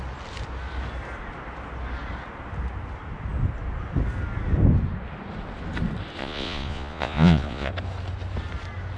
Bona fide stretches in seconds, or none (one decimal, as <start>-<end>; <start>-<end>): 0.0-6.2; 7.7-9.0

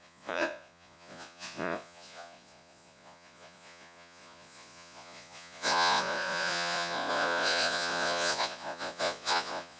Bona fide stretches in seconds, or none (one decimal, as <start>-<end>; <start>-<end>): none

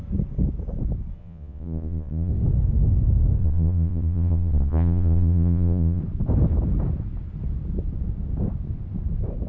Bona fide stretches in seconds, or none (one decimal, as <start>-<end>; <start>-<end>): 0.0-1.2; 2.3-3.4; 6.0-9.5

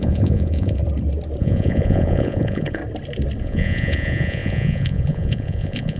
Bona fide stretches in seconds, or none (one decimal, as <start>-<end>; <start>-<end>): 0.8-1.4; 2.8-3.4

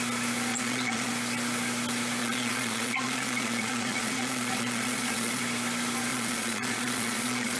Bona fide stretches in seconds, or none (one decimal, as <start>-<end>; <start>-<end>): 0.0-0.5; 1.1-2.2; 5.4-6.1